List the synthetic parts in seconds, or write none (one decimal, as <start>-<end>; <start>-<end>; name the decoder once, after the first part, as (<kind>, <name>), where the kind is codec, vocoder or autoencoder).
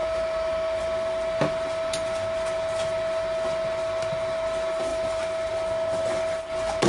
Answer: none